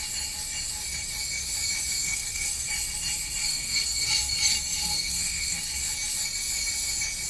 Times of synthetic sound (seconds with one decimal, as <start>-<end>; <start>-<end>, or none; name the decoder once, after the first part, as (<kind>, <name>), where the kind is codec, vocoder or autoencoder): 2.0-2.7 (codec, SNAC); 3.5-4.1; 4.8-5.6